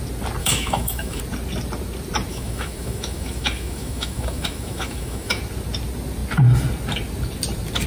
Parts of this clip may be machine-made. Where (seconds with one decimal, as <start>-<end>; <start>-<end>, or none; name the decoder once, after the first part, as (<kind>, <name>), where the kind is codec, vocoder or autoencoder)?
0.4-1.2 (autoencoder, DAC-VAE); 2.3-5.4